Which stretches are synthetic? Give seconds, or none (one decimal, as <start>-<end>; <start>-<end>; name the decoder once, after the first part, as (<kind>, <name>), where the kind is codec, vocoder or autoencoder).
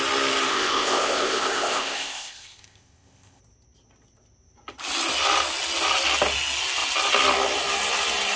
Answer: 0.5-3.4 (codec, ZipCodec)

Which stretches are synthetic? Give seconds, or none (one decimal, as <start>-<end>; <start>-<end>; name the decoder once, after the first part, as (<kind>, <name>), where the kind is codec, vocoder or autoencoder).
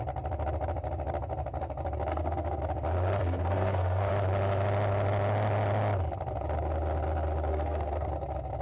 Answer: 2.1-2.6 (codec, SNAC); 3.2-4.1; 7.5-8.1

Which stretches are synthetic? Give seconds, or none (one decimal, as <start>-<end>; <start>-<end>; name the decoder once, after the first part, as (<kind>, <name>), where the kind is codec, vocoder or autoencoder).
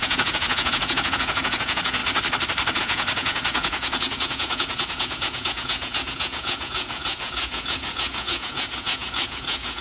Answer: 0.0-2.0 (vocoder, Vocos); 2.8-9.8